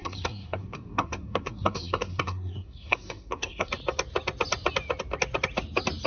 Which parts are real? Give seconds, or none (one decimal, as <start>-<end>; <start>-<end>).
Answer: 3.7-6.1